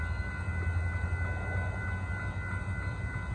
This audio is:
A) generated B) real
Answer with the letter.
B